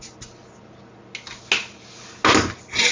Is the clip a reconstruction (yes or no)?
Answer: no